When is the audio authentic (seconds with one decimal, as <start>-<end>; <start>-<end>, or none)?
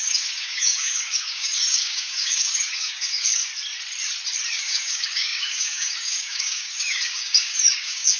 3.5-4.5